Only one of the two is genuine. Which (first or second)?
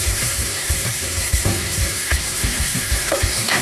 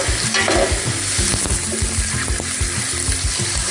second